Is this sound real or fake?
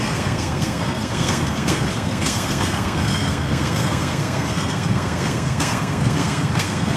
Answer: fake